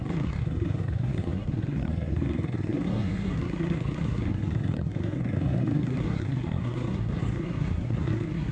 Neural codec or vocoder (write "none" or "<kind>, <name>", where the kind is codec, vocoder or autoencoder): codec, SNAC